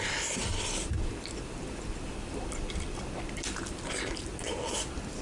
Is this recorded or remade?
recorded